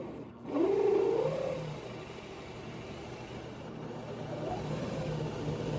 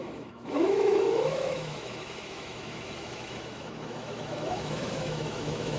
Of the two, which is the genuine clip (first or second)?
first